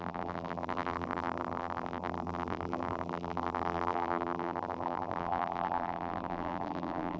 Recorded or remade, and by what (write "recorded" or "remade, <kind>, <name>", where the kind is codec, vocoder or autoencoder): remade, vocoder, BigVGAN v2